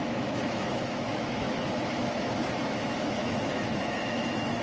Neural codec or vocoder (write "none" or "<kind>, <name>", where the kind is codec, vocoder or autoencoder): autoencoder, DAC-VAE